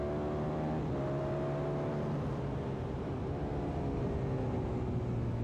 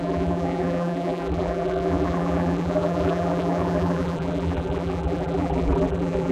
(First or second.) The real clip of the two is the first